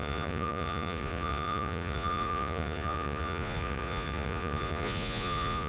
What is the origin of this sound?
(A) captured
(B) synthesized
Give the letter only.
B